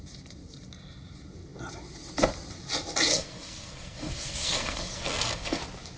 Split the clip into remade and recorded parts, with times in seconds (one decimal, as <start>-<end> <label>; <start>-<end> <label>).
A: 0.0-3.1 recorded; 3.1-5.6 remade; 5.6-6.0 recorded